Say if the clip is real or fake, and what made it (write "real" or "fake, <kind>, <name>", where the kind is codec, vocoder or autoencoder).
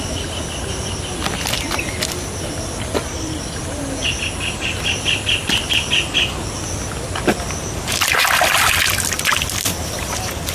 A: real